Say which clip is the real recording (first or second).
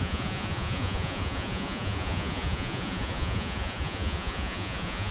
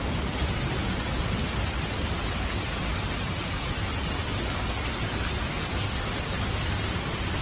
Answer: second